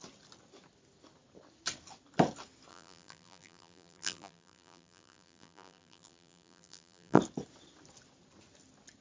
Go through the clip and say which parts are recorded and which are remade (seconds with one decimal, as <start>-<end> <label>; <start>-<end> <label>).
0.0-2.7 recorded; 2.7-7.2 remade; 7.2-9.0 recorded